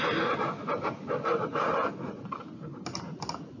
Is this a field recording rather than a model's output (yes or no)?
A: yes